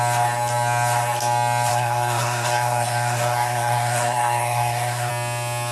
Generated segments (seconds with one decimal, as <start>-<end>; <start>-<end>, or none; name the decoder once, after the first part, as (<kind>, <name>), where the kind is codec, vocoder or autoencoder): 1.7-5.1 (codec, SNAC)